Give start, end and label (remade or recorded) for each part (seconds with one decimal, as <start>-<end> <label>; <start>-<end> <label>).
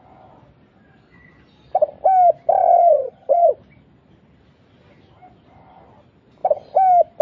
0.0-2.6 recorded; 2.6-3.5 remade; 3.5-7.2 recorded